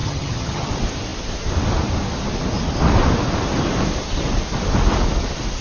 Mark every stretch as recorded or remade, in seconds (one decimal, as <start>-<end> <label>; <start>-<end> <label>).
0.0-0.7 remade; 0.7-5.6 recorded